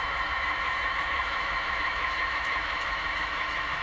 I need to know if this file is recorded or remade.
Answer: remade